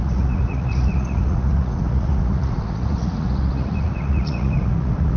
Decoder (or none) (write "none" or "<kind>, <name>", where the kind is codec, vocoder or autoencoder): vocoder, Vocos